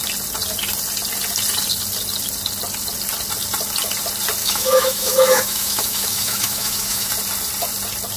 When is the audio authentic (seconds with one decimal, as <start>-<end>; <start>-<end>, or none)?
0.0-4.4; 7.1-8.2